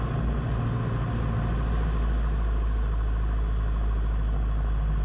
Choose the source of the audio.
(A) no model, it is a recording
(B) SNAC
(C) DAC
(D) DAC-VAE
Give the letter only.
A